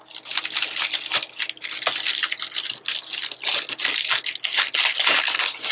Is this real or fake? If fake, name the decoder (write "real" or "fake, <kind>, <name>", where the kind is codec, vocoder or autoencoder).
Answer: real